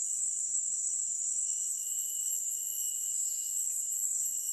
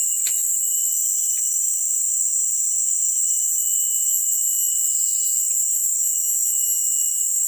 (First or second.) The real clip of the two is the second